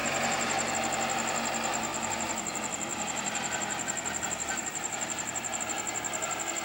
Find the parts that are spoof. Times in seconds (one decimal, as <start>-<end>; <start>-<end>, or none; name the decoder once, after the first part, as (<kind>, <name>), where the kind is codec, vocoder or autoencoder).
0.0-0.7 (vocoder, BigVGAN v2); 1.9-5.6